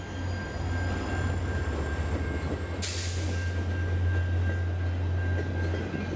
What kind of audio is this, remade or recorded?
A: recorded